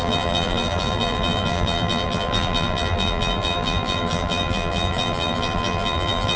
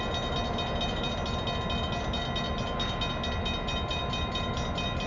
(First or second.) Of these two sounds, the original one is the second